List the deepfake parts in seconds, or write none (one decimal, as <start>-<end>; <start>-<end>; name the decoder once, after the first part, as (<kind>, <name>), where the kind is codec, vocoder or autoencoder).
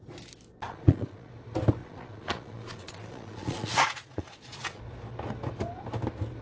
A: 0.7-1.3 (vocoder, Vocos); 1.8-4.8